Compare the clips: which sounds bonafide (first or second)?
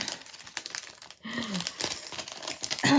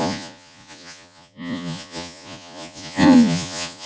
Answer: first